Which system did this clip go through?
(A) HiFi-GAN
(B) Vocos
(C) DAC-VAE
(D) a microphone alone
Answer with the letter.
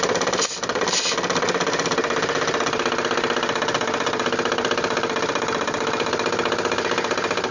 D